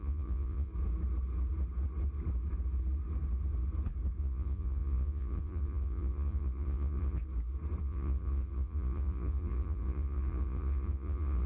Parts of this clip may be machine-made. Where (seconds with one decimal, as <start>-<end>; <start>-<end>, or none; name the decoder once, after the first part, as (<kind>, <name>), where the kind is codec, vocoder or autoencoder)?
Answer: 0.0-0.7 (vocoder, Vocos); 4.2-7.2; 7.8-11.5